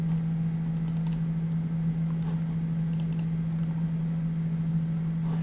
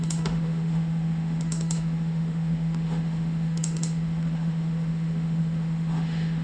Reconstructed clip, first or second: second